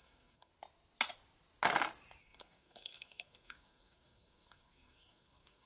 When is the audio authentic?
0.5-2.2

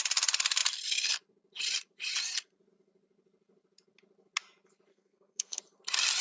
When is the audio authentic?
0.0-4.9; 5.6-6.2